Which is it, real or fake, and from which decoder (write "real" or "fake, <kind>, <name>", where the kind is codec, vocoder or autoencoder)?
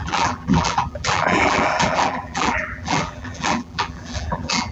fake, vocoder, BigVGAN v2